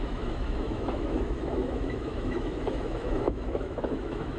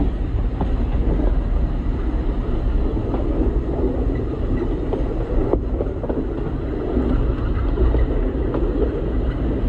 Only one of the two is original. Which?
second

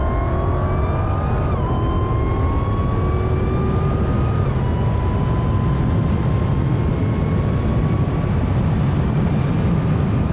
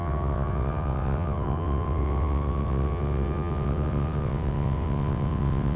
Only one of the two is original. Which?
first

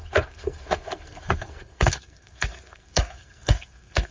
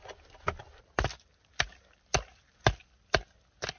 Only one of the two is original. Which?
second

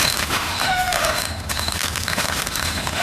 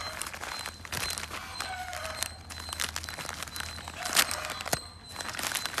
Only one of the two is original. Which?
second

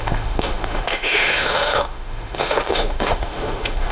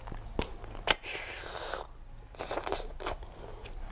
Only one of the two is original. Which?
second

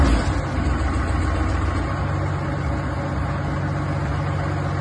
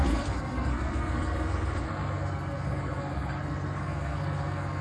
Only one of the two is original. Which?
first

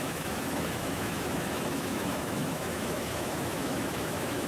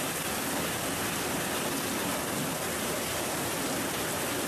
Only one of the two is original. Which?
second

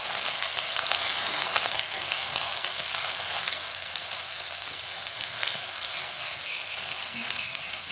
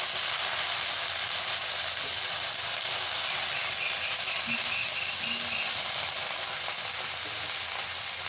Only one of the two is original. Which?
second